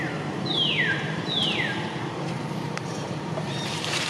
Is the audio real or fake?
fake